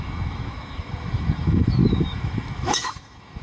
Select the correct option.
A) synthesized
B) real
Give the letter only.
A